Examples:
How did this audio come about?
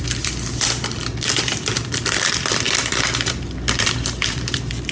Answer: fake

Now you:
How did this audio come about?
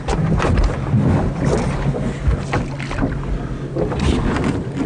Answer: real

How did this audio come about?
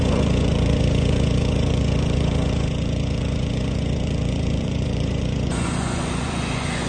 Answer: fake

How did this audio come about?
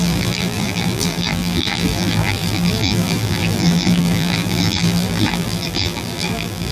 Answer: fake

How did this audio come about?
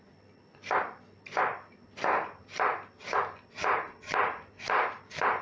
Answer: real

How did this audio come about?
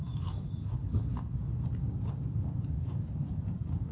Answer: fake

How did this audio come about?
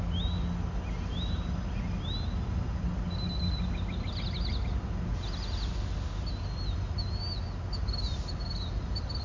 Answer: real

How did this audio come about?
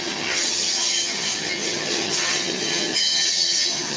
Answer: fake